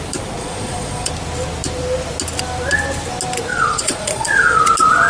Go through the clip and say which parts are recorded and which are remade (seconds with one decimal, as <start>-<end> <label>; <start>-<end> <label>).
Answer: 0.0-0.4 recorded; 0.4-1.1 remade; 1.1-3.5 recorded; 3.5-4.6 remade; 4.6-5.1 recorded